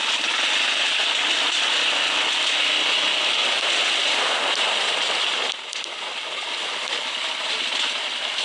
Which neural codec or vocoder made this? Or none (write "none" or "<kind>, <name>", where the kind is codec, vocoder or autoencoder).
none